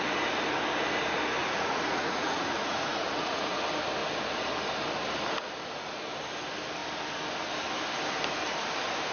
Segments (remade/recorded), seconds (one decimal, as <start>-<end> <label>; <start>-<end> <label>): 0.0-1.4 recorded; 1.4-3.6 remade; 3.6-9.1 recorded